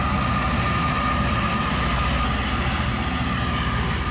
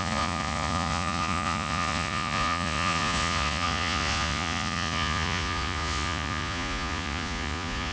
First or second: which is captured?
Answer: first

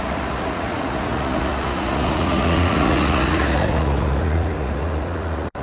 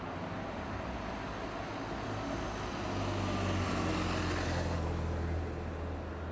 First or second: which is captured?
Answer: second